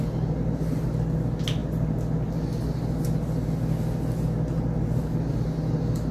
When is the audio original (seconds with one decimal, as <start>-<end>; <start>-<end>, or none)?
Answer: 0.0-6.1